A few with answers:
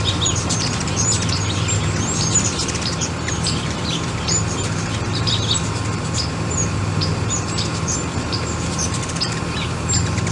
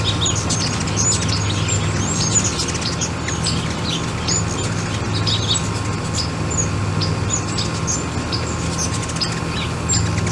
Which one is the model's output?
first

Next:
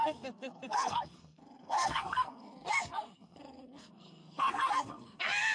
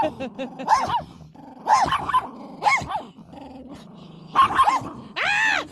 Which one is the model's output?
first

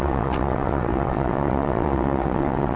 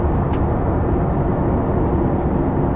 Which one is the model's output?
first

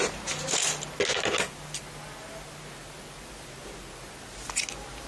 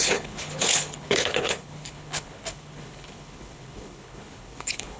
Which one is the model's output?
second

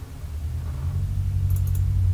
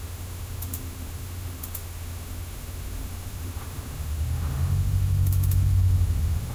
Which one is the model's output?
second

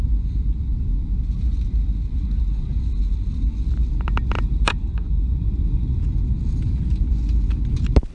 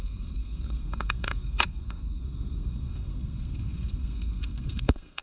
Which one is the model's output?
second